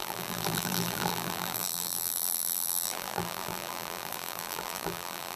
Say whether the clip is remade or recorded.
remade